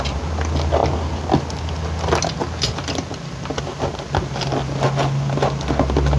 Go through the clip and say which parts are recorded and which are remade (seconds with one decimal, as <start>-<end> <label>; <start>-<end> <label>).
0.0-6.2 recorded